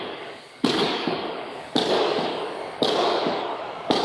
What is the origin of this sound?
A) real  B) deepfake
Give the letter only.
B